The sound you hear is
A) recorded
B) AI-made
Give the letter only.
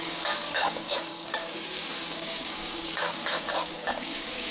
B